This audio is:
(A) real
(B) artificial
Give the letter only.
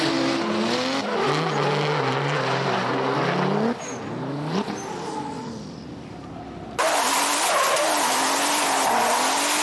A